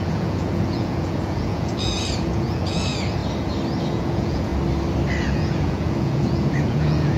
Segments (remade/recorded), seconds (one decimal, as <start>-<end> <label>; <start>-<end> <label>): 0.0-3.2 remade; 3.2-3.8 recorded; 3.8-4.5 remade; 4.5-5.2 recorded; 5.2-7.2 remade